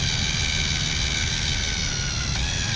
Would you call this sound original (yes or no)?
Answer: yes